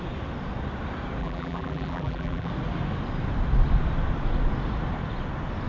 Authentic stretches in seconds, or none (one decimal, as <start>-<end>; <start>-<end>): 0.0-1.2; 2.5-5.7